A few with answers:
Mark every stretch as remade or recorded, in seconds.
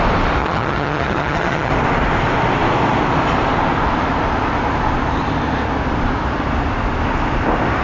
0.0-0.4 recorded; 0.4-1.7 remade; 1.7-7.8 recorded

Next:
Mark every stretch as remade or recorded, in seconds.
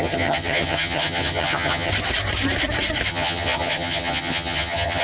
0.0-1.9 remade; 1.9-3.1 recorded; 3.1-5.0 remade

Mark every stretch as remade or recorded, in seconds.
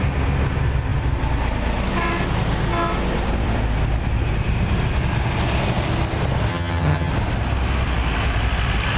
0.0-6.5 recorded; 6.5-7.1 remade; 7.1-9.0 recorded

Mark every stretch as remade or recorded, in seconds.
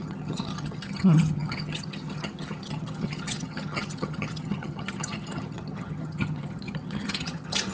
0.0-7.7 remade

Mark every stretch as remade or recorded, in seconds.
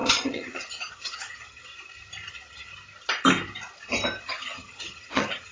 0.0-1.7 remade; 1.7-2.3 recorded; 2.3-2.7 remade; 2.7-4.2 recorded; 4.2-5.5 remade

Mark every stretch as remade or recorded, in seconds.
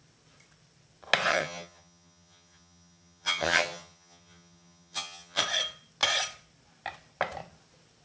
0.0-1.3 recorded; 1.3-5.4 remade; 5.4-8.0 recorded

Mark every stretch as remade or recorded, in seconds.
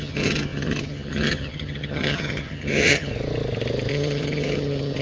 0.0-3.1 remade; 3.1-3.9 recorded; 3.9-5.0 remade